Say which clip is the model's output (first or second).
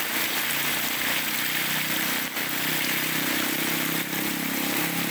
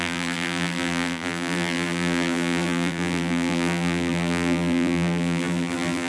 second